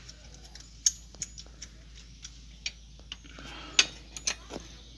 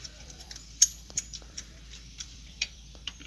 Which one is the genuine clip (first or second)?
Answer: first